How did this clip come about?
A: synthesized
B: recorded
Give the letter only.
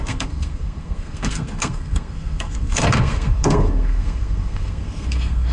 A